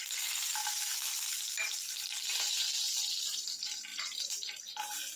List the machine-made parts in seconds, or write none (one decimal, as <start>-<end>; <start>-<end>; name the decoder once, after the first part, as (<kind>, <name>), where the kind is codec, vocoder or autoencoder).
3.9-4.7 (vocoder, BigVGAN v2)